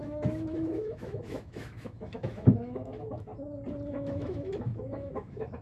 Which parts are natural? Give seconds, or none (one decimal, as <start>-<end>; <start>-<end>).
3.3-3.9